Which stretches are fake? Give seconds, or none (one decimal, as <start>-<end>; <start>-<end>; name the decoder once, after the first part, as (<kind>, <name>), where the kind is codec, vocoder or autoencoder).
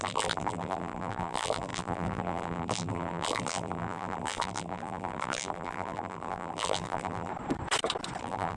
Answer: 0.0-7.3 (vocoder, BigVGAN v2); 8.2-8.6